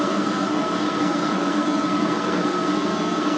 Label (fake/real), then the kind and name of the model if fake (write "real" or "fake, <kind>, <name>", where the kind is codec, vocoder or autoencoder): fake, codec, SNAC